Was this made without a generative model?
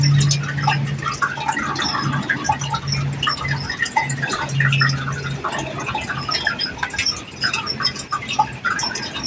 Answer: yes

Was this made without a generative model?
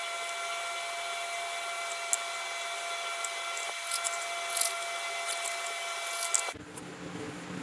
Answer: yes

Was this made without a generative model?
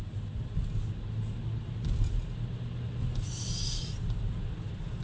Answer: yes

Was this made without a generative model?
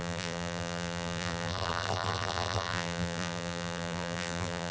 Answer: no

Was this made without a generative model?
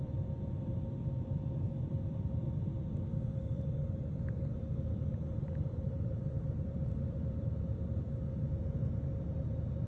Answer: no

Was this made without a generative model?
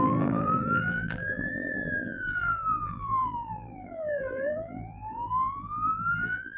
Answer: no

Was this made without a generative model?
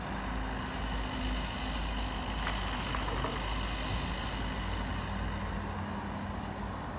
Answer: yes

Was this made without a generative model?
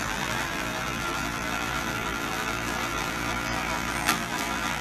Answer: no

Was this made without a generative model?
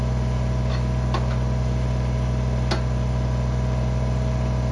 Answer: yes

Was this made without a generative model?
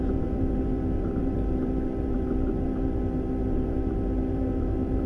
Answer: no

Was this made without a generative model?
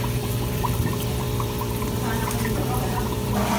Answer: no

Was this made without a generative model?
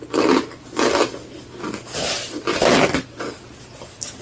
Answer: yes